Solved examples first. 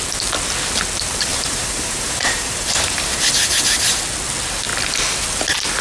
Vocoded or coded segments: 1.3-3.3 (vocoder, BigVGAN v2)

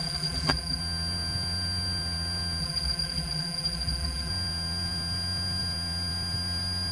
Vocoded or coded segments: 0.0-0.8 (vocoder, BigVGAN v2); 2.6-4.3

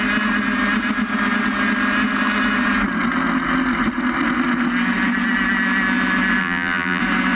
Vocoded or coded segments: 6.4-7.0 (vocoder, BigVGAN v2)